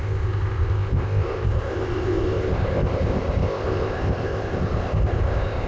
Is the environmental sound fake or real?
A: fake